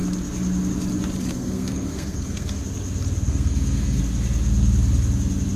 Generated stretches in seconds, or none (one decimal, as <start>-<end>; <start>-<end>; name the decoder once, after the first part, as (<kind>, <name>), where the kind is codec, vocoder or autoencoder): 1.3-2.6 (codec, SNAC); 3.3-4.0